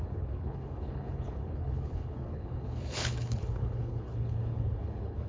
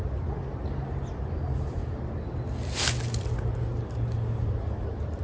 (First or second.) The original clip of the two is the second